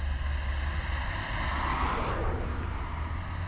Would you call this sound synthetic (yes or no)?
no